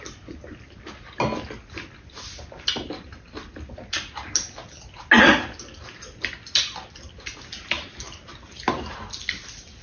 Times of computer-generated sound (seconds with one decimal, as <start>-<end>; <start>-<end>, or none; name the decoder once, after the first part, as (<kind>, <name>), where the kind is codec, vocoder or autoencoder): none

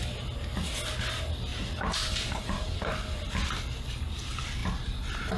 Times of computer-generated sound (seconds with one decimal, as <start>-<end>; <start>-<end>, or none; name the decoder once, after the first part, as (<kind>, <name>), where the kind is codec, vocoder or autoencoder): 1.5-2.9 (vocoder, BigVGAN v2)

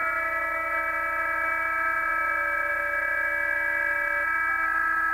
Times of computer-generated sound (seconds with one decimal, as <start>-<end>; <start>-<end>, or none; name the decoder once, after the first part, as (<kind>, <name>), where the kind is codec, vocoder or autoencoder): none